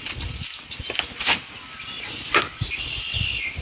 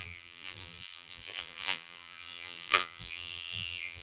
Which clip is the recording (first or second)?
first